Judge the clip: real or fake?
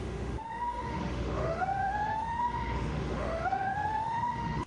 fake